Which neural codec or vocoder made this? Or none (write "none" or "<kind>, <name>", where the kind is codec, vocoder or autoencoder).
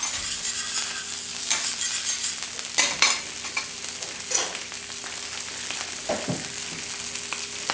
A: none